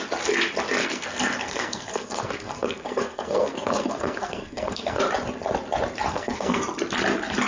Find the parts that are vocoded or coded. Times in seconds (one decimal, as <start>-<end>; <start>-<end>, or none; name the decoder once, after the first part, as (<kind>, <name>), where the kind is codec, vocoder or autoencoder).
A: 0.8-5.0 (codec, SNAC); 6.1-6.6